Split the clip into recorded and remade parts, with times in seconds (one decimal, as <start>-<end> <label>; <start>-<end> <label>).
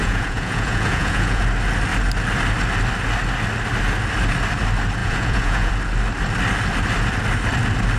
0.0-1.4 remade; 1.4-5.0 recorded; 5.0-5.7 remade; 5.7-8.0 recorded